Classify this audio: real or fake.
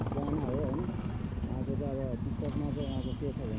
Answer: real